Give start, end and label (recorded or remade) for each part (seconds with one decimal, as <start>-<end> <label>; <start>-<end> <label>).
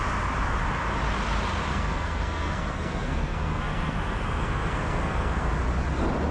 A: 0.0-1.7 recorded; 1.7-5.5 remade; 5.5-6.3 recorded